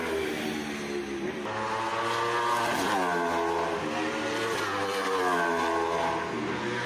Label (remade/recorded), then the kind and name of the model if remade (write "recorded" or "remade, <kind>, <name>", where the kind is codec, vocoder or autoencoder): recorded